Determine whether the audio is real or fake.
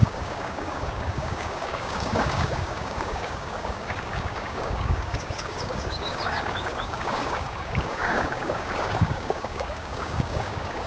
fake